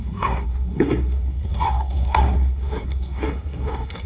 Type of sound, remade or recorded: remade